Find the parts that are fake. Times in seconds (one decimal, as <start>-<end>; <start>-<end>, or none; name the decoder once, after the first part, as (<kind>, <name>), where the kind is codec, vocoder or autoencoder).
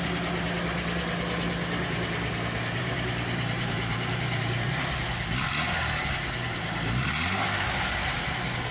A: 2.8-7.0 (vocoder, BigVGAN v2); 8.0-8.7